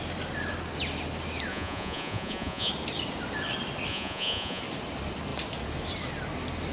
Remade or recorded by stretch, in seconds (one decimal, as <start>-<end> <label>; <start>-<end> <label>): 0.0-1.5 recorded; 1.5-2.7 remade; 2.7-3.9 recorded; 3.9-4.6 remade; 4.6-6.7 recorded